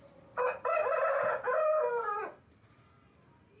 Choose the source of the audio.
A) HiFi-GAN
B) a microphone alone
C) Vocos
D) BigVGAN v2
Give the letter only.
B